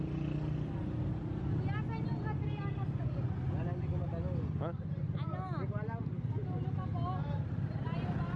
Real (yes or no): yes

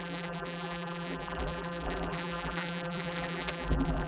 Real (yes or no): no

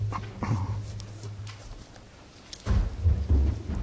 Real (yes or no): yes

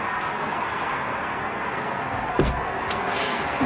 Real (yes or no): no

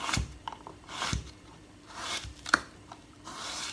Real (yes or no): no